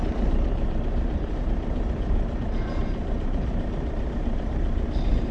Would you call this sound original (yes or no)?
no